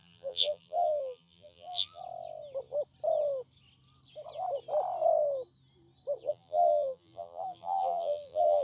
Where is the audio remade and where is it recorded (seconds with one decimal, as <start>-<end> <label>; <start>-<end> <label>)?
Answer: 0.0-2.0 remade; 2.0-6.3 recorded; 6.3-8.6 remade